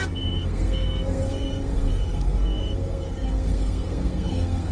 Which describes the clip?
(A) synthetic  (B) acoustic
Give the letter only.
A